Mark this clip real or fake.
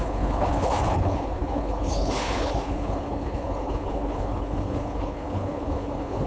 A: fake